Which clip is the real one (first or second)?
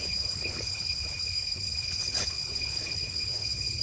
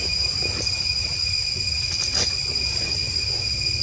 second